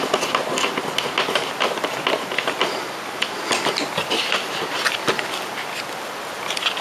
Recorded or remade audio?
recorded